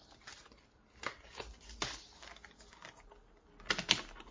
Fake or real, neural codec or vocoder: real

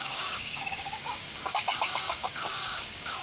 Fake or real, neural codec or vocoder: fake, codec, DAC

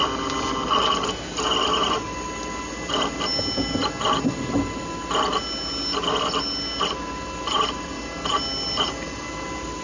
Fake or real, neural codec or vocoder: real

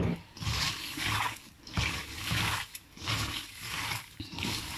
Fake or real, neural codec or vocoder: fake, codec, DAC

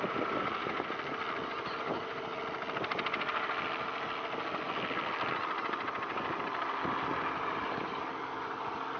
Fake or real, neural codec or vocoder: real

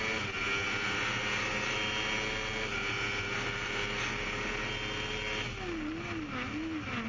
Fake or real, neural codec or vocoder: real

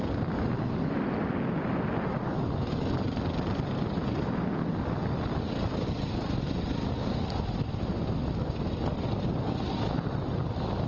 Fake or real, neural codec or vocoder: real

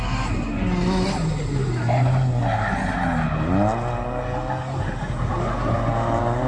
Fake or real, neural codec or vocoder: real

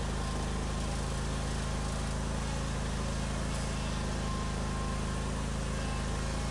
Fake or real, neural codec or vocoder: real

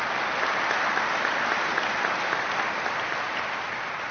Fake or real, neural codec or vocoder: real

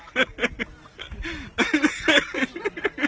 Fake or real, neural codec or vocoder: real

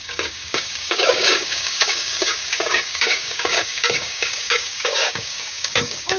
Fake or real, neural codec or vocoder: fake, codec, DAC